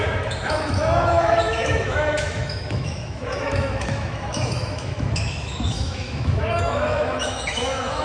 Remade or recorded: remade